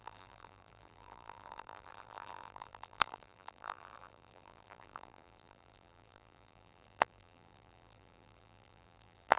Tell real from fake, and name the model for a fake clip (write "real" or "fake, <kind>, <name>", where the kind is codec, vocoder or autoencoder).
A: fake, vocoder, BigVGAN v2